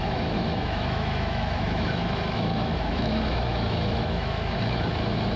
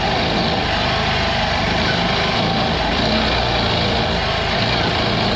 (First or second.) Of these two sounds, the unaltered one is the second